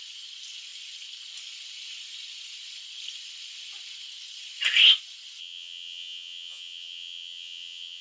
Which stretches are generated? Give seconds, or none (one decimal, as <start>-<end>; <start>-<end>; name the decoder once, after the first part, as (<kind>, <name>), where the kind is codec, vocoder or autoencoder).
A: 5.4-8.0 (vocoder, HiFi-GAN)